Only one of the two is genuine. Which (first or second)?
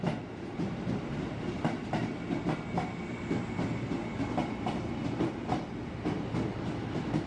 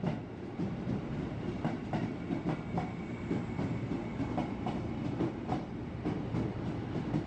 first